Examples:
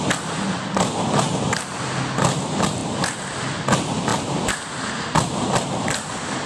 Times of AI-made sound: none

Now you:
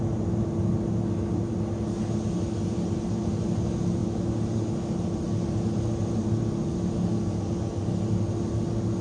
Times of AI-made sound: none

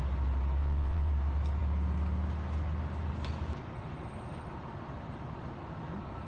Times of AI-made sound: 0.6-1.1 (vocoder, WaveNeXt)

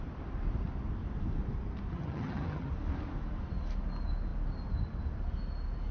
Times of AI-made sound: 1.9-2.7 (vocoder, HiFi-GAN)